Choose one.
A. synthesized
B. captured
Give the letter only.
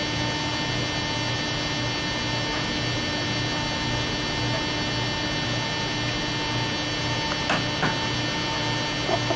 B